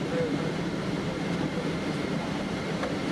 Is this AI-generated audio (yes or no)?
yes